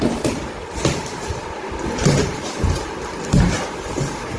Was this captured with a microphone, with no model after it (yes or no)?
no